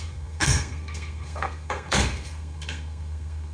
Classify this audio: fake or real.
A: fake